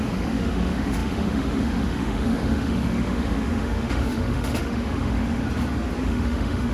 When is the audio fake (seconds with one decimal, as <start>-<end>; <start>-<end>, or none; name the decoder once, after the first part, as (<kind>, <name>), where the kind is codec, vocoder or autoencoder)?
0.0-5.4 (autoencoder, DAC-VAE); 6.0-6.7